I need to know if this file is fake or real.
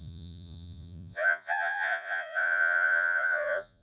fake